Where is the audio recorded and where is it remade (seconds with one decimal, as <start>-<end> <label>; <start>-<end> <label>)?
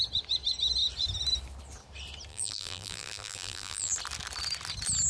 0.0-2.3 recorded; 2.3-3.9 remade; 3.9-5.1 recorded